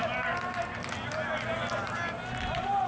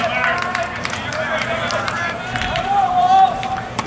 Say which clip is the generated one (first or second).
second